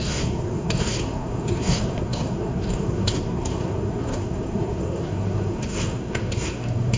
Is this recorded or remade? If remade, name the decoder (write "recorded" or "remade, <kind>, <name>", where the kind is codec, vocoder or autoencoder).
remade, codec, SNAC